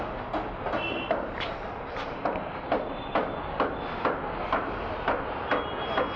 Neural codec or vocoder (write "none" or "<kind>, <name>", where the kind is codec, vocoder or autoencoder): none